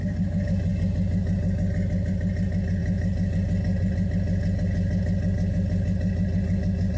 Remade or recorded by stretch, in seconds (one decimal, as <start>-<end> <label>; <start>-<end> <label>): 0.0-7.0 recorded